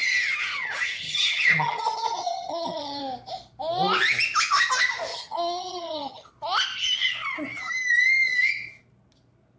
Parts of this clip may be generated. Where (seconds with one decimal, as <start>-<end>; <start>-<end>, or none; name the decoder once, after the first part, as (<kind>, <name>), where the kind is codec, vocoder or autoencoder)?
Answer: 0.0-3.0 (vocoder, HiFi-GAN); 5.1-6.3